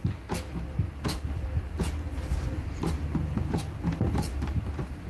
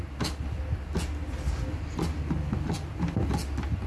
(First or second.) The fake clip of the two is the first